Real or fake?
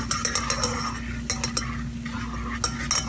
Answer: real